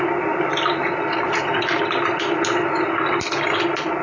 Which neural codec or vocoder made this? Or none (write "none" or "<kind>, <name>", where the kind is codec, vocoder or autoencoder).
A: none